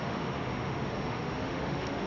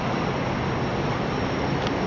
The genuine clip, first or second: second